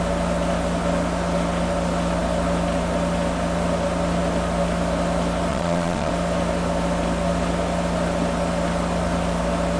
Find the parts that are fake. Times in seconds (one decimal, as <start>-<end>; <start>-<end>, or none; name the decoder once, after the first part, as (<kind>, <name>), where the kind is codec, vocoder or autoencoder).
5.5-6.1 (vocoder, Vocos)